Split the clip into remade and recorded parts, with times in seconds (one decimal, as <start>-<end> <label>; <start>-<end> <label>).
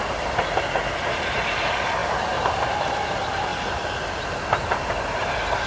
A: 0.0-5.7 recorded